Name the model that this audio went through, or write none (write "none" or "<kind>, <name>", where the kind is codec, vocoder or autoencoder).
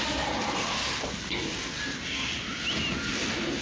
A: none